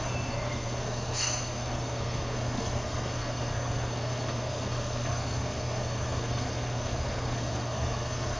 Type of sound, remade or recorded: remade